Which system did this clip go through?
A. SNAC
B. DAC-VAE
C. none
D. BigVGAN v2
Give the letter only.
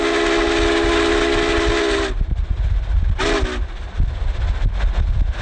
C